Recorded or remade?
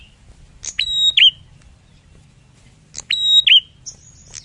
recorded